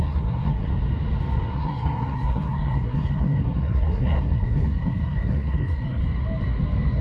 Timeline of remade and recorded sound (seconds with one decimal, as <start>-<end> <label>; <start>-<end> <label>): 0.0-0.7 remade; 0.7-1.5 recorded; 1.5-6.0 remade; 6.0-7.0 recorded